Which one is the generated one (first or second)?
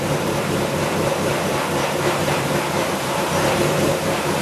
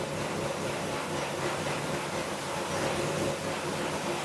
first